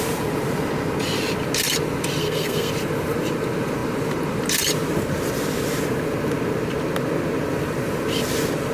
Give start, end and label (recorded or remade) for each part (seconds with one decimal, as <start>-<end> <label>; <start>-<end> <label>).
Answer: 0.0-2.2 recorded; 2.2-2.7 remade; 2.7-8.7 recorded